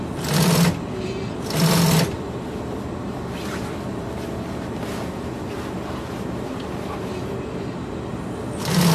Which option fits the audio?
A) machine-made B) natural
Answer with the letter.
B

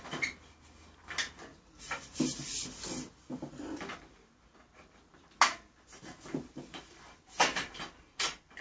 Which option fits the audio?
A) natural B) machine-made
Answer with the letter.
A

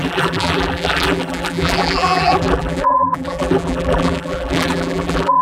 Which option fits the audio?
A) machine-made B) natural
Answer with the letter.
A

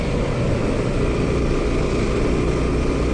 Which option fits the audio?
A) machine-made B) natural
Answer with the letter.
B